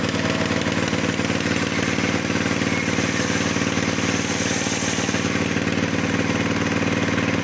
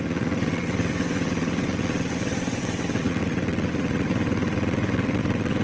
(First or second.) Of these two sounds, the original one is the first